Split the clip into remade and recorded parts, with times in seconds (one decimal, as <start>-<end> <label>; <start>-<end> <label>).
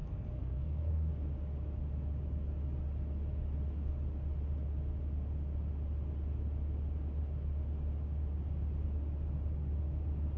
0.0-1.1 remade; 1.1-10.4 recorded